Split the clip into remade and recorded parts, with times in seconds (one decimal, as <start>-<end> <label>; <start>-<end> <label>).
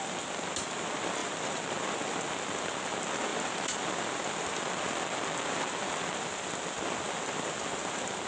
0.0-3.3 recorded; 3.3-4.2 remade; 4.2-8.3 recorded